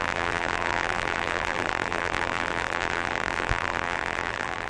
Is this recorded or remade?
remade